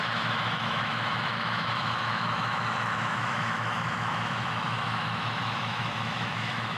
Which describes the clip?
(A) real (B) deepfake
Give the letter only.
B